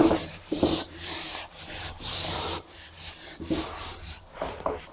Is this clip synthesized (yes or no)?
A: yes